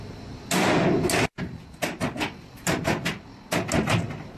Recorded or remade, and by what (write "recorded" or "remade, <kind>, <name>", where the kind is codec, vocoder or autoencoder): recorded